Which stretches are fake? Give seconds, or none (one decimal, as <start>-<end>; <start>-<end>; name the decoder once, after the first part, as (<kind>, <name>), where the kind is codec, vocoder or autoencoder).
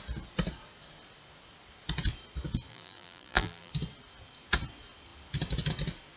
2.7-3.7 (vocoder, BigVGAN v2)